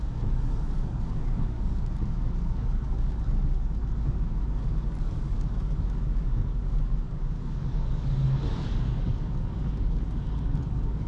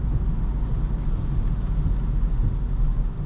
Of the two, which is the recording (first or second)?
second